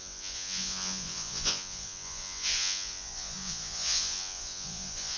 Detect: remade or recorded remade